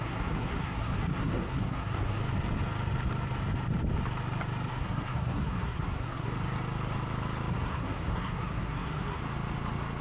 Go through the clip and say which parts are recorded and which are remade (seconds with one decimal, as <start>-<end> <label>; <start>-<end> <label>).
0.0-2.2 remade; 2.2-4.7 recorded; 4.7-6.3 remade; 6.3-7.5 recorded; 7.5-9.2 remade; 9.2-10.0 recorded